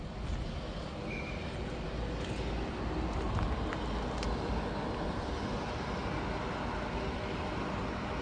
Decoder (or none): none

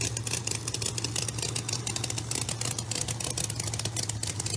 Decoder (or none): none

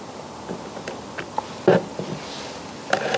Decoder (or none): vocoder, BigVGAN v2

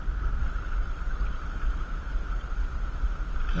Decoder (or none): none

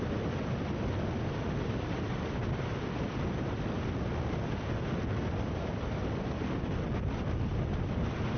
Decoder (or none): none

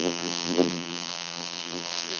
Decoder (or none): vocoder, BigVGAN v2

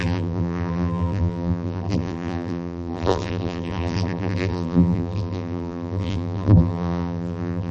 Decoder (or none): vocoder, BigVGAN v2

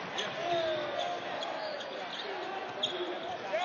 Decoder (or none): none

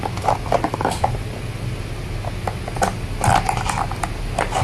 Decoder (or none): none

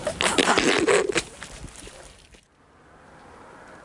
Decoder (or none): vocoder, BigVGAN v2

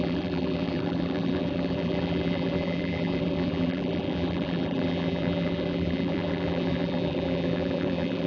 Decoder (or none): vocoder, BigVGAN v2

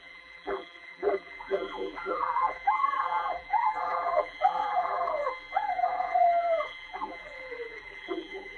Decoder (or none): vocoder, BigVGAN v2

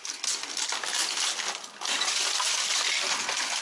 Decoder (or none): none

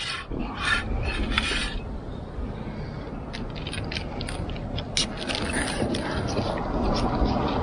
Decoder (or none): none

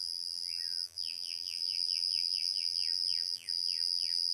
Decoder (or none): vocoder, BigVGAN v2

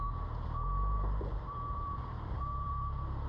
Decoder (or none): vocoder, BigVGAN v2